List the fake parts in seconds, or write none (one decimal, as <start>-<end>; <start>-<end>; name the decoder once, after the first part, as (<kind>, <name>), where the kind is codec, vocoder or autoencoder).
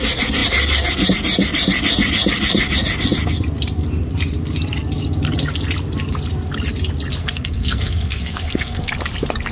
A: 7.2-8.9 (codec, SNAC)